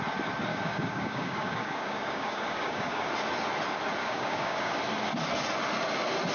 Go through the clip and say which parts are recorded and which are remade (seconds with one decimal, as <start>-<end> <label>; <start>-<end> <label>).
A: 0.0-0.5 recorded; 0.5-3.1 remade; 3.1-4.0 recorded; 4.0-4.8 remade; 4.8-6.3 recorded